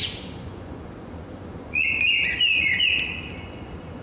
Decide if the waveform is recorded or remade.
remade